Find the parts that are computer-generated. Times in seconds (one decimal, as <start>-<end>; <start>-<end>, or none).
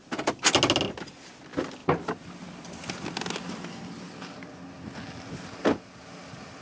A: none